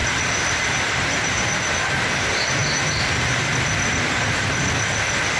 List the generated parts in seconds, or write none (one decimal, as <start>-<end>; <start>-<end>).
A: 0.0-1.4; 2.6-3.1